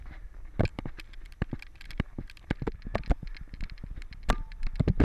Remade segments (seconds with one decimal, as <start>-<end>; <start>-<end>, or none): none